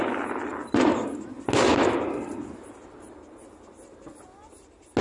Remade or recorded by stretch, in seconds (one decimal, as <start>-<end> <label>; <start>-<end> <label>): 0.0-5.0 recorded

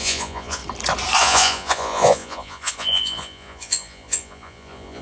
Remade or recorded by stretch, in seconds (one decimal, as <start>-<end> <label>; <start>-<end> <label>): 0.0-0.6 remade; 0.6-1.2 recorded; 1.2-5.0 remade

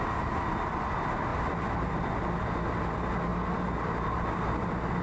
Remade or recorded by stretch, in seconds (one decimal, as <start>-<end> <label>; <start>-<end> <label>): 0.0-5.0 recorded